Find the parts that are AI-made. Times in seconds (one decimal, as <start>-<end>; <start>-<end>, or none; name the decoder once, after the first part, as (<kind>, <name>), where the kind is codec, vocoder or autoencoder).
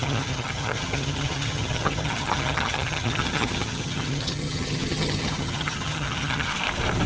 0.0-6.5 (vocoder, HiFi-GAN)